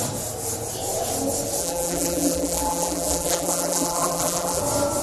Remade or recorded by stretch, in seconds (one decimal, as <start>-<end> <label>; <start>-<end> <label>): 0.0-1.6 recorded; 1.6-4.6 remade; 4.6-5.0 recorded